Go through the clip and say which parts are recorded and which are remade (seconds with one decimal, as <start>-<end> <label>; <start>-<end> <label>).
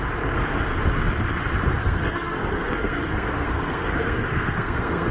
0.0-1.8 recorded; 1.8-5.1 remade